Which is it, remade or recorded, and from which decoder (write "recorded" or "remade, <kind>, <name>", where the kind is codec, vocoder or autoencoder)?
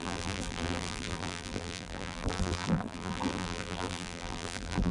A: remade, vocoder, BigVGAN v2